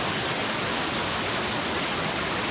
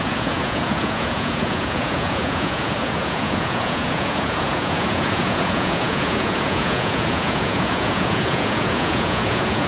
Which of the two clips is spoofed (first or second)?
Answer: second